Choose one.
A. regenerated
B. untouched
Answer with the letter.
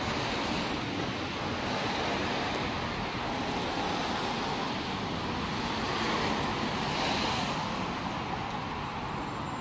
B